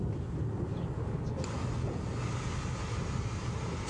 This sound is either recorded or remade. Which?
recorded